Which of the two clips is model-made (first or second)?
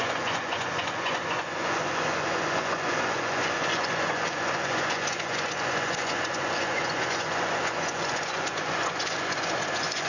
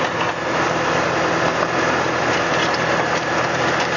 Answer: first